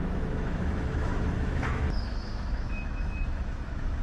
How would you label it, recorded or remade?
remade